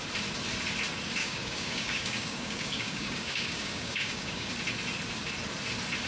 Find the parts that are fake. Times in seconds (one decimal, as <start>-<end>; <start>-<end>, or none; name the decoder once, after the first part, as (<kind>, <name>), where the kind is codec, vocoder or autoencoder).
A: 1.2-4.5 (codec, DAC)